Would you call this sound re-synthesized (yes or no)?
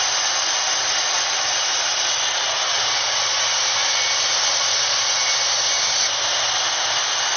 no